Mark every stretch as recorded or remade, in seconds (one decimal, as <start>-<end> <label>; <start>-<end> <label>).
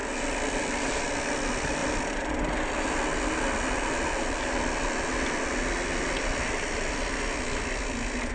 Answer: 0.0-1.0 remade; 1.0-1.8 recorded; 1.8-4.5 remade; 4.5-8.3 recorded